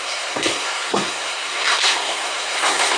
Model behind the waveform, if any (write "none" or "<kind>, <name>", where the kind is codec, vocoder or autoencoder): codec, SNAC